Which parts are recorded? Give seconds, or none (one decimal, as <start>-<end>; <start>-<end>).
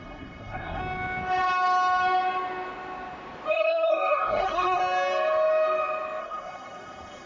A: 0.8-3.5; 4.8-6.2